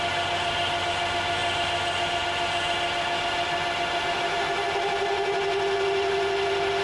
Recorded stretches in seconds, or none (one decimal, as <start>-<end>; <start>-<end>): 0.0-6.8